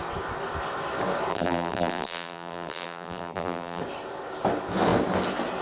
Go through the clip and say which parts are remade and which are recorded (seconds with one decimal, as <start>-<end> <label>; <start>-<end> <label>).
0.0-1.3 recorded; 1.3-3.8 remade; 3.8-5.6 recorded